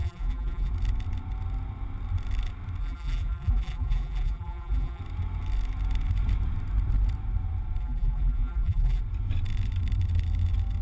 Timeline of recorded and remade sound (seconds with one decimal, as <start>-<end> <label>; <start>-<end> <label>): 0.0-0.7 remade; 0.7-2.8 recorded; 2.8-5.0 remade; 5.0-7.8 recorded; 7.8-9.0 remade; 9.0-10.8 recorded